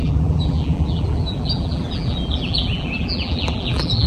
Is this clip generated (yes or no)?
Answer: yes